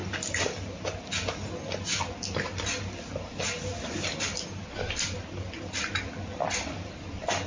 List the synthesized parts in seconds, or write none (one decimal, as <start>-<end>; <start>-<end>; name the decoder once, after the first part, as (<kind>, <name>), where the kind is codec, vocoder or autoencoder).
none